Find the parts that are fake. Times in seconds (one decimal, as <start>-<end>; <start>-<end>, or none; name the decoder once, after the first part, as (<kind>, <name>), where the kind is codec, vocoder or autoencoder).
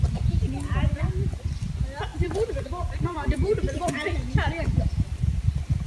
2.1-5.9 (vocoder, BigVGAN v2)